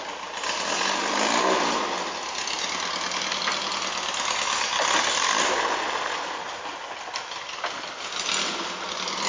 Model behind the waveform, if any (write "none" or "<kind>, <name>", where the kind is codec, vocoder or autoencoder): none